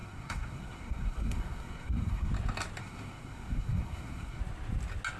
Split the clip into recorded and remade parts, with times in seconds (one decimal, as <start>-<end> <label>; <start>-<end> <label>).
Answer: 0.0-2.3 remade; 2.3-2.8 recorded; 2.8-4.4 remade; 4.4-5.2 recorded

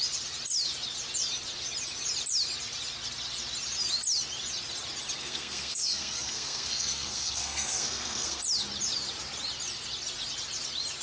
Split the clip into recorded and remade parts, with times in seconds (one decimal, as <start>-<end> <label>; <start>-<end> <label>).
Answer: 0.0-5.2 recorded; 5.2-8.4 remade; 8.4-11.0 recorded

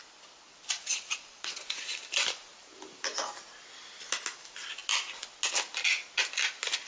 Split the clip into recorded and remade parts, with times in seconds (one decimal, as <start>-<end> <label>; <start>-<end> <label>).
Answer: 0.0-0.8 recorded; 0.8-1.8 remade; 1.8-6.9 recorded

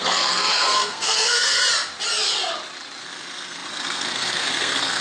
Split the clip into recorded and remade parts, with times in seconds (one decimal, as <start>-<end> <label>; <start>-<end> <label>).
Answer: 0.0-1.6 remade; 1.6-3.0 recorded; 3.0-5.0 remade